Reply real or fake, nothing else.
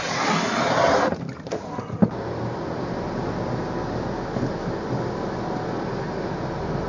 real